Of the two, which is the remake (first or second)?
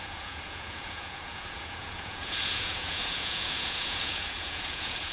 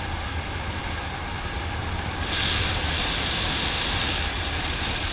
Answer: first